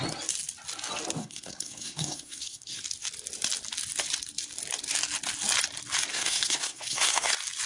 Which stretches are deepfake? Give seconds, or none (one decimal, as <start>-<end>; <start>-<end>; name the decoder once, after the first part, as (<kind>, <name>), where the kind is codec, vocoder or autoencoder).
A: 1.2-2.8 (codec, SNAC); 6.1-7.3